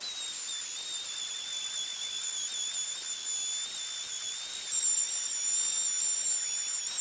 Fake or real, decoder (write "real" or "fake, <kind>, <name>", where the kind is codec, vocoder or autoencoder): real